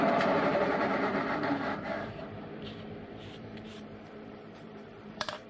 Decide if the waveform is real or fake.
fake